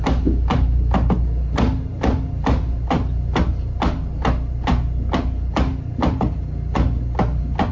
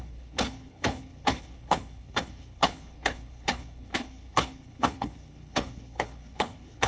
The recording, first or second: first